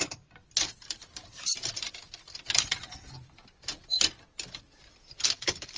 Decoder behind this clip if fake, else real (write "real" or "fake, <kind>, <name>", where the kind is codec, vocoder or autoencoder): fake, vocoder, BigVGAN v2